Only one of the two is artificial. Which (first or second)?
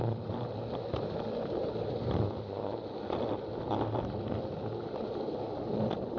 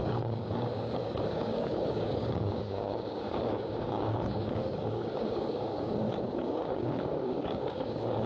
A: second